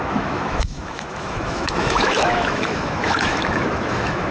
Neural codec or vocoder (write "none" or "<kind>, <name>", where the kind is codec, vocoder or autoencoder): autoencoder, DAC-VAE